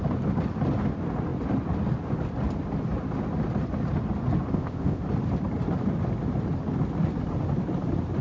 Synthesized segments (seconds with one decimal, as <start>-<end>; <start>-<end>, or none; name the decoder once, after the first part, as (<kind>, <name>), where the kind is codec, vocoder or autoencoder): 4.5-5.0 (codec, ZipCodec)